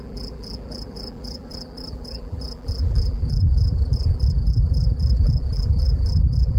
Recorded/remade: remade